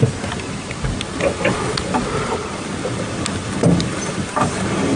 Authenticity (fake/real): real